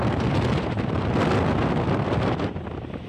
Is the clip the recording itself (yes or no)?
yes